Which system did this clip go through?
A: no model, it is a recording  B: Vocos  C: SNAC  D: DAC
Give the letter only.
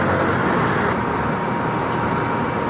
A